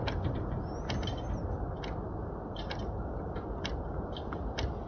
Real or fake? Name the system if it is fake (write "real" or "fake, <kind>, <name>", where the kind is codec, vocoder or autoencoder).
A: real